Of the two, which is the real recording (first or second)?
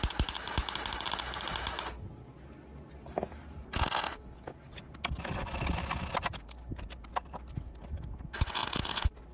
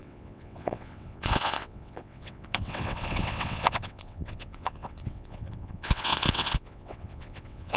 first